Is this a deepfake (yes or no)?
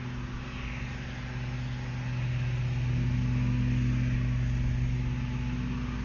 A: no